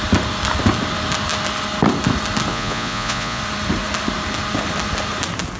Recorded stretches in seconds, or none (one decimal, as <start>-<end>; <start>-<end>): 0.0-2.5; 3.4-5.6